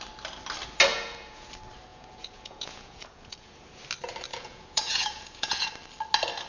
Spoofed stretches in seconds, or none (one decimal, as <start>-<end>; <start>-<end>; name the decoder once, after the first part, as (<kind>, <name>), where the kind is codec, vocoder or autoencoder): 0.9-1.5 (vocoder, Vocos); 1.9-3.6; 4.3-5.7